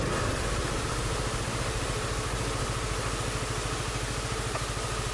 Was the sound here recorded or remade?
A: recorded